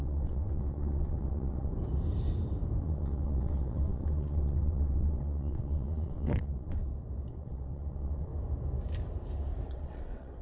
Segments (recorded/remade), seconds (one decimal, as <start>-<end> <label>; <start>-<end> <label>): 0.0-1.7 remade; 1.7-2.8 recorded; 2.8-6.8 remade; 6.8-7.3 recorded; 7.3-8.3 remade; 8.3-9.7 recorded; 9.7-10.4 remade